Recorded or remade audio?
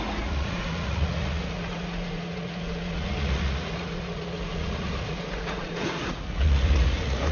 remade